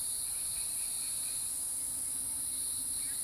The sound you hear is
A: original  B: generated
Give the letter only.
A